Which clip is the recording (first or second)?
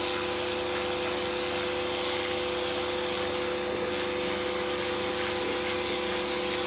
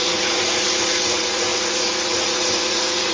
first